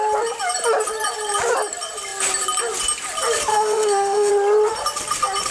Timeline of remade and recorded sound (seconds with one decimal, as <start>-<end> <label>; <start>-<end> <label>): 0.0-3.5 recorded; 3.5-4.3 remade; 4.3-5.5 recorded